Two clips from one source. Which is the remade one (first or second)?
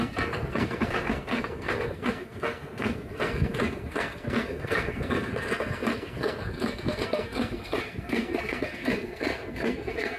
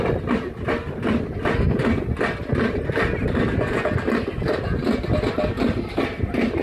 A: first